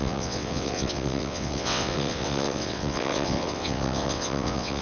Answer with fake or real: fake